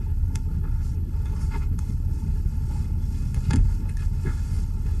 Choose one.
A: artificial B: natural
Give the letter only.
A